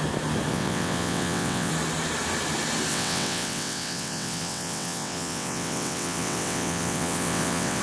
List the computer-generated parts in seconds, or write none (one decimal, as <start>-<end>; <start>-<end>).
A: 0.5-1.7; 2.9-7.8